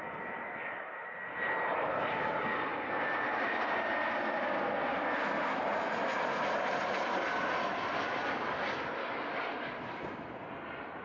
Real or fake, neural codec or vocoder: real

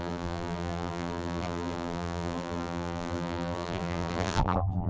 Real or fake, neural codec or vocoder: fake, vocoder, BigVGAN v2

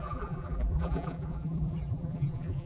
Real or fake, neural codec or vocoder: fake, vocoder, BigVGAN v2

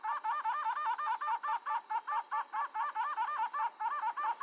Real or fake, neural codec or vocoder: real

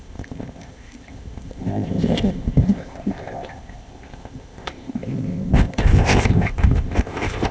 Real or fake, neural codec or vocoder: fake, codec, ZipCodec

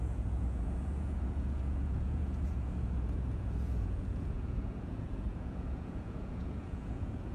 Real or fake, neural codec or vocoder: fake, vocoder, Vocos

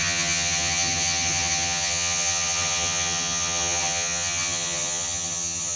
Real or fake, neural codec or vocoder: fake, vocoder, HiFi-GAN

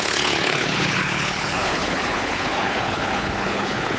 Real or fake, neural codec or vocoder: fake, codec, HILCodec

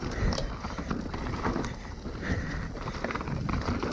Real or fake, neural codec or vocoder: real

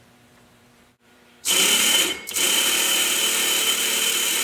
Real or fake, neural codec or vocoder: fake, vocoder, BigVGAN v2